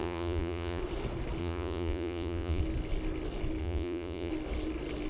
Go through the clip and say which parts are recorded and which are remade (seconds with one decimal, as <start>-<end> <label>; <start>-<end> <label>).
0.0-0.8 remade; 0.8-1.4 recorded; 1.4-2.6 remade; 2.6-3.6 recorded; 3.6-4.3 remade; 4.3-5.1 recorded